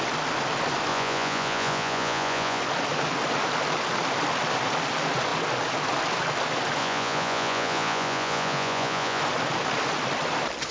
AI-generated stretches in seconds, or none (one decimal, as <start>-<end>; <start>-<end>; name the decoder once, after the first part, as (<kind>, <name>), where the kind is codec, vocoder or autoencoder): 0.9-2.6 (vocoder, Vocos); 6.8-9.2